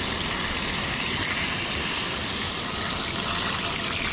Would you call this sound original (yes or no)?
yes